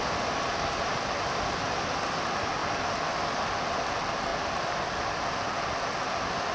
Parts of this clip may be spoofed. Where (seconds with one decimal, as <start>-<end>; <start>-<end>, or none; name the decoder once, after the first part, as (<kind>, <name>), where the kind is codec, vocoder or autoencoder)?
none